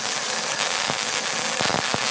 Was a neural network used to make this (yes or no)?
no